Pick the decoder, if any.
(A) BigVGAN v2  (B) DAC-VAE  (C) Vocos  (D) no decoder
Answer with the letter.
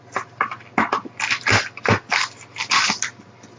D